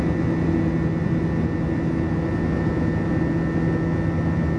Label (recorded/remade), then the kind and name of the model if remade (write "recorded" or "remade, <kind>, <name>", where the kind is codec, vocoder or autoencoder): recorded